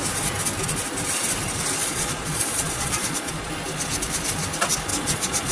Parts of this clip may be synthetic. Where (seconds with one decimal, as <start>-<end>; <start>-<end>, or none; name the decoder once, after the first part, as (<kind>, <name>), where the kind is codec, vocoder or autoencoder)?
1.8-3.5 (vocoder, Vocos); 4.9-5.5